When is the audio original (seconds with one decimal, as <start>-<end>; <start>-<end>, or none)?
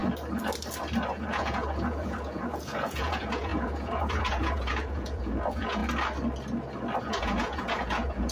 0.0-1.1; 5.8-7.0